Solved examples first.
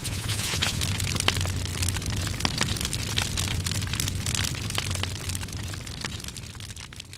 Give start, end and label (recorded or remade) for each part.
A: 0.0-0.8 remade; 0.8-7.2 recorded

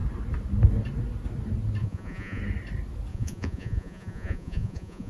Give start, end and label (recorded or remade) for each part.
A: 0.0-1.8 recorded; 1.8-2.4 remade; 2.4-3.1 recorded; 3.1-5.1 remade

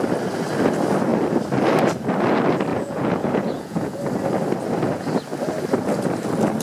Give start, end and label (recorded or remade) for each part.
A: 0.0-2.7 recorded; 2.7-4.0 remade; 4.0-6.6 recorded

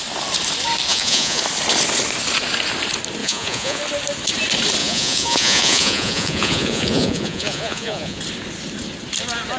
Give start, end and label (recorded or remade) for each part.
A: 0.0-0.9 recorded; 0.9-1.4 remade; 1.4-3.2 recorded; 3.2-3.8 remade; 3.8-4.8 recorded; 4.8-8.2 remade; 8.2-9.6 recorded

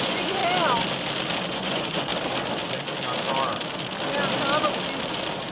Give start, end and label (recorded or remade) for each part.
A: 0.0-0.4 remade; 0.4-1.5 recorded; 1.5-2.1 remade; 2.1-5.5 recorded

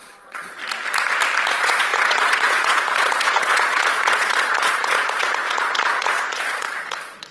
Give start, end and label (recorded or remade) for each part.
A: 0.0-0.6 remade; 0.6-1.5 recorded; 1.5-7.3 remade

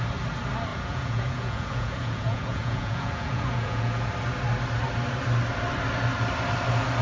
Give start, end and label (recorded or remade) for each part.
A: 0.0-0.7 recorded; 0.7-4.1 remade; 4.1-7.0 recorded